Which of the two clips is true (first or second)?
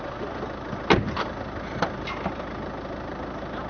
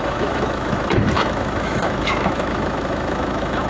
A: first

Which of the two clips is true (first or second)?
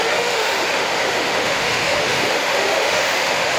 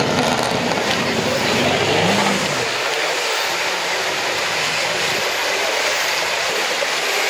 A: second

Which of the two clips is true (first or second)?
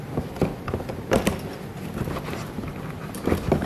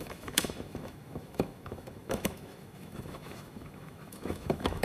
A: first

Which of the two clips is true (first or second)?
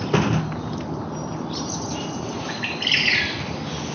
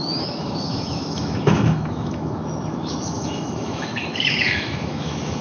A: first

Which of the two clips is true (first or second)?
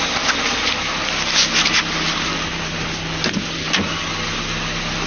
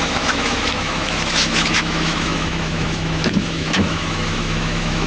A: first